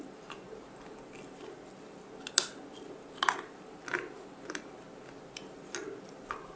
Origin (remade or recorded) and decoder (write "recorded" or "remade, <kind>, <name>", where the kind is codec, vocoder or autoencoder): recorded